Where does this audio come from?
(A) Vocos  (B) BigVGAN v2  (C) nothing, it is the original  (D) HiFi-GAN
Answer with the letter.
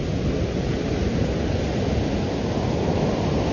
C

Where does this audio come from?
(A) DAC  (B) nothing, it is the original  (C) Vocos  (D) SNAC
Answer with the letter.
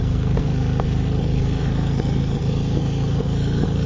D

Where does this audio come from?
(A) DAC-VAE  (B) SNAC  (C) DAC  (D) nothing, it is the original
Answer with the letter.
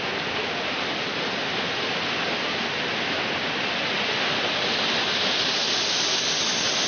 D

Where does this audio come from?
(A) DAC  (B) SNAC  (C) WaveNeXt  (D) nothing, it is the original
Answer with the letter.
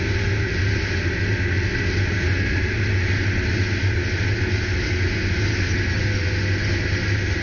D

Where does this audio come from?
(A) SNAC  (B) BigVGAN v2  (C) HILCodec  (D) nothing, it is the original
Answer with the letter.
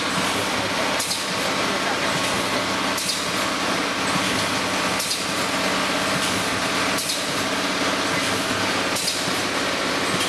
D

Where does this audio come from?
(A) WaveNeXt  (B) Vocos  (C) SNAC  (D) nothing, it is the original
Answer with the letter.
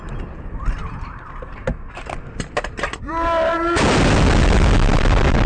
D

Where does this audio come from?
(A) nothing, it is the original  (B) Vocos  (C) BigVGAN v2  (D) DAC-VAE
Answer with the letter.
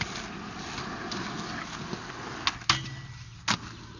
A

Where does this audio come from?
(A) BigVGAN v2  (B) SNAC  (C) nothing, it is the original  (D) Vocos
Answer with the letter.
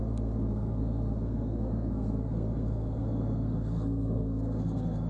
B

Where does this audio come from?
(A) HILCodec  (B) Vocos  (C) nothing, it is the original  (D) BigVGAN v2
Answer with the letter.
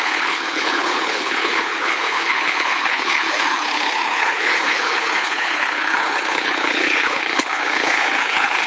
A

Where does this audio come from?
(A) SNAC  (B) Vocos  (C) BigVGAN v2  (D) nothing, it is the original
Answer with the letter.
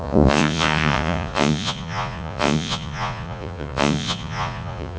B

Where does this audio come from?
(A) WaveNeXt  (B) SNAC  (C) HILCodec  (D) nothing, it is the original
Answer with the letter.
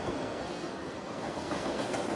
B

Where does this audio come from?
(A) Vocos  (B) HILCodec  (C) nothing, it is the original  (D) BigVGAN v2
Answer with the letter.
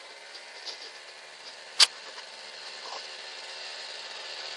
D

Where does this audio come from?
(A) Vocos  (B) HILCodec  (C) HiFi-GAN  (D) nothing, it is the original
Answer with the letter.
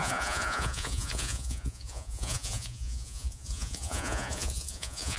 A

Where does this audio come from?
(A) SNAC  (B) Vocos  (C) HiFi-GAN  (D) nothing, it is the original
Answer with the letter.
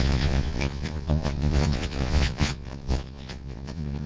B